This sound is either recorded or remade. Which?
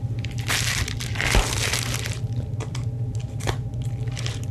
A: recorded